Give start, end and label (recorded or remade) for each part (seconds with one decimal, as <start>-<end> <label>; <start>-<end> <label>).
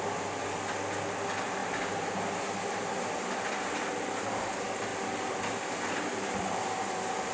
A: 0.0-7.3 recorded